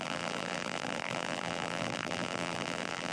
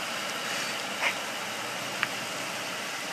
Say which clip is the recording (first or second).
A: second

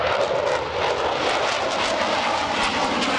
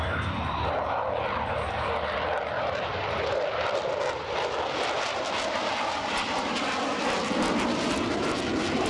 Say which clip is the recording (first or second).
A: first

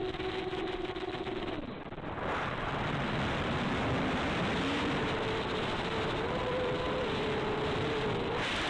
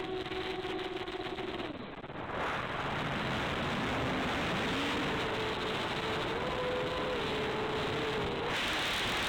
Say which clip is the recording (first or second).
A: second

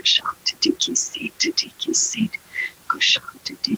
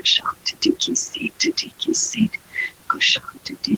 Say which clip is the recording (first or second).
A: first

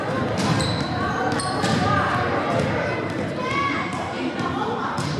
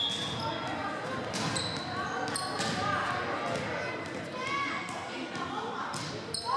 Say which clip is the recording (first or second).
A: second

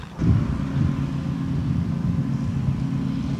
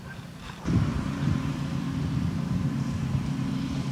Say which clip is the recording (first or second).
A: first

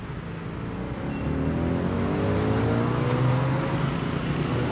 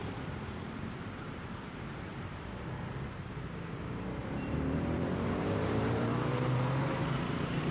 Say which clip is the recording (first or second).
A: first